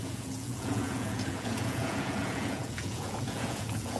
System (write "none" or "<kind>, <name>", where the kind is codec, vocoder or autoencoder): vocoder, Vocos